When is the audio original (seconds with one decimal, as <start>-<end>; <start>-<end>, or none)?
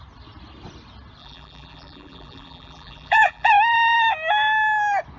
0.0-1.2; 3.5-5.2